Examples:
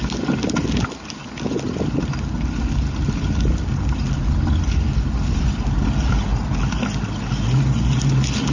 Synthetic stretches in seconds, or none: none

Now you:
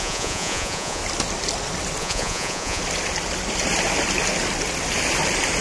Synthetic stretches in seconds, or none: 0.0-1.0 (vocoder, Vocos); 2.0-2.8

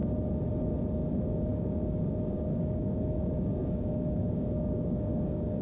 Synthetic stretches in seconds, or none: 0.9-5.6 (codec, DAC)